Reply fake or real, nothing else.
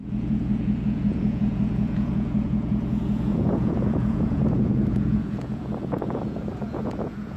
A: fake